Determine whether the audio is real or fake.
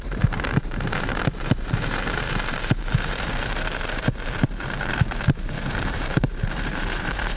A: fake